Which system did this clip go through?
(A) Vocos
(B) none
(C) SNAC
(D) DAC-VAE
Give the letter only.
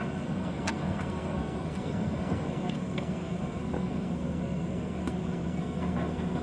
C